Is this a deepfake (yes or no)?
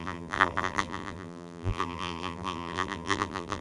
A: yes